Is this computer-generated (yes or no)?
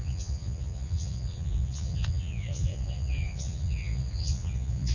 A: yes